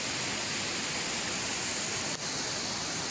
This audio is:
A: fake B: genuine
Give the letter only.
B